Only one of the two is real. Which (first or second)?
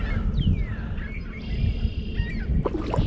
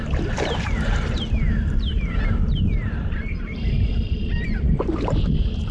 first